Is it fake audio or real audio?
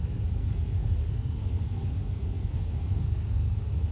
fake